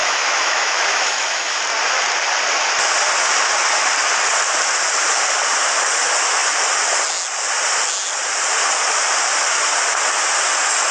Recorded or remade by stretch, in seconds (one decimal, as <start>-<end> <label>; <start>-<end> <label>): 0.0-1.6 remade; 1.6-10.9 recorded